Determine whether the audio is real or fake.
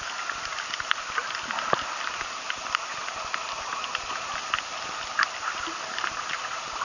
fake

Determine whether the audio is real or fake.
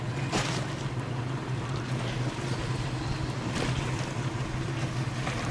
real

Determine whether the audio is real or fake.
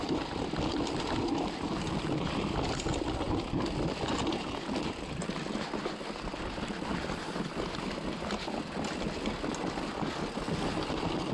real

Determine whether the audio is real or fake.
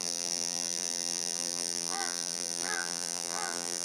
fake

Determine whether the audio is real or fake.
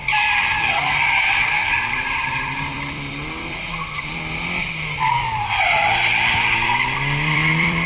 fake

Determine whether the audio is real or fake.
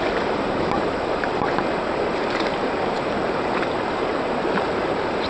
fake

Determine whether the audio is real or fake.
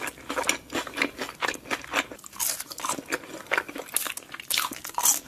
real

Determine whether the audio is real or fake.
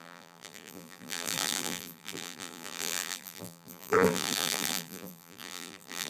fake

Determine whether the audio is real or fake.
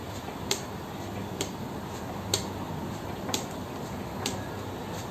real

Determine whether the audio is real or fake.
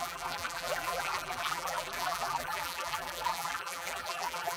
fake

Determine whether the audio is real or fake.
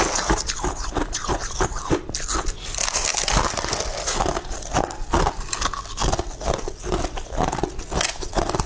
real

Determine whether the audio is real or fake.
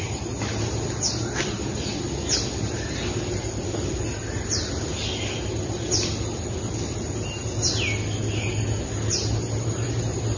real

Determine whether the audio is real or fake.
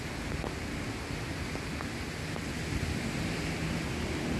real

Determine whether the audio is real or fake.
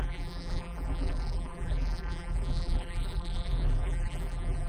fake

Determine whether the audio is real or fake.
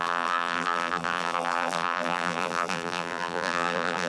fake